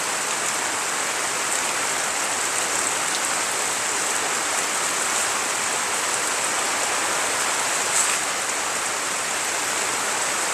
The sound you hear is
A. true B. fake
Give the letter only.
A